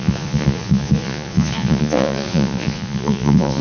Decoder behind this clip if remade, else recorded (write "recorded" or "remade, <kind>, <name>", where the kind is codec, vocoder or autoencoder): remade, vocoder, Vocos